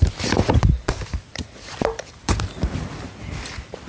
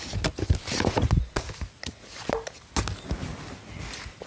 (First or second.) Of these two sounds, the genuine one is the second